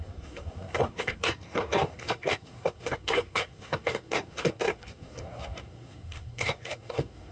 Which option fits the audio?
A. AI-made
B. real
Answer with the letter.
A